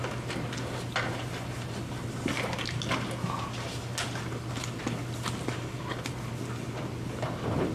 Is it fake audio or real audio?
real